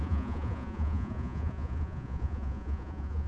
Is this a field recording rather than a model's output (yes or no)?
no